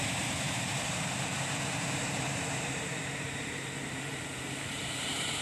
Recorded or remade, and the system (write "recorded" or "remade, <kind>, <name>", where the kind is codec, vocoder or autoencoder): remade, vocoder, BigVGAN v2